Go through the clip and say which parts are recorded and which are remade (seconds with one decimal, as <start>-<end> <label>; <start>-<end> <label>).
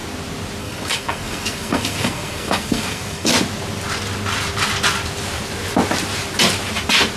0.0-0.6 recorded; 0.6-3.3 remade; 3.3-7.2 recorded